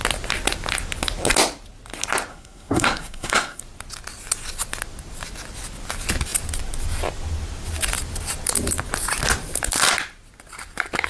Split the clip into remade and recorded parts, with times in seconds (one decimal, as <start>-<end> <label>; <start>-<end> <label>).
0.0-2.3 recorded; 2.3-3.6 remade; 3.6-11.1 recorded